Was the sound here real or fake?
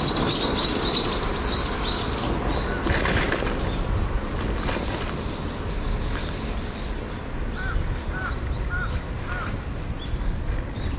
real